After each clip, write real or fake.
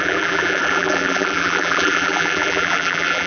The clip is fake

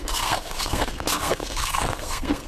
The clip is fake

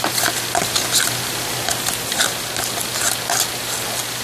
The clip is real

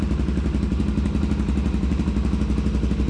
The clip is real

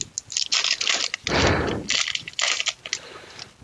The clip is real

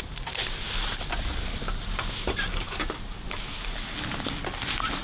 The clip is real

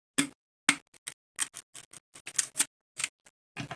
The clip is real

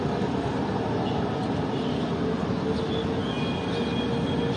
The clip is real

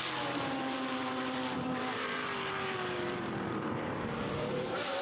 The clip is fake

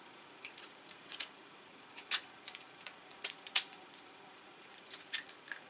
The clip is fake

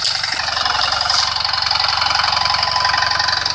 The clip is real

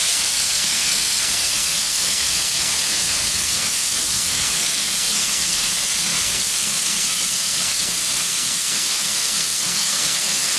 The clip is fake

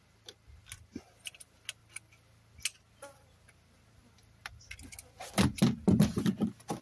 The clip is real